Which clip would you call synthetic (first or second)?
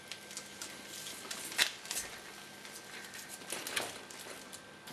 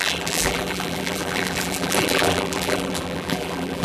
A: second